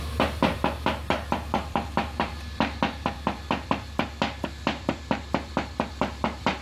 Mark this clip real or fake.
fake